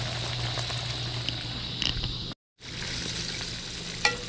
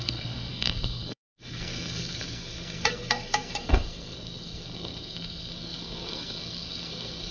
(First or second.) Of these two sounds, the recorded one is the first